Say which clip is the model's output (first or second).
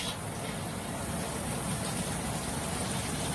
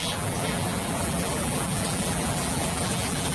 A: second